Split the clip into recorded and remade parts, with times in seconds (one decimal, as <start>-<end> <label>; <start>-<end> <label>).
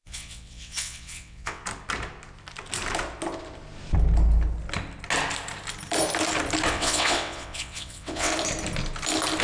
0.0-1.6 remade; 1.6-6.7 recorded; 6.7-8.3 remade; 8.3-9.4 recorded